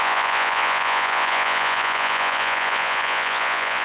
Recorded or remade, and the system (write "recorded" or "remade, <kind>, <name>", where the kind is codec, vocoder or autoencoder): remade, vocoder, Vocos